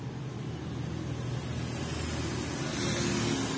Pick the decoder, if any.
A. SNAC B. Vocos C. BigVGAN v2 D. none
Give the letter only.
D